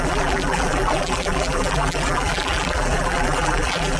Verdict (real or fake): fake